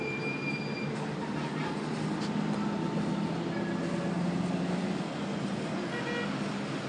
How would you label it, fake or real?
real